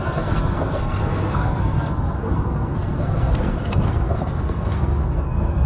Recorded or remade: remade